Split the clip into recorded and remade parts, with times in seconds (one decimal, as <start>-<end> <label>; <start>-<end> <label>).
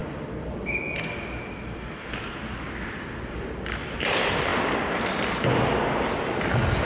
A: 0.0-0.8 remade; 0.8-4.5 recorded; 4.5-5.1 remade; 5.1-6.8 recorded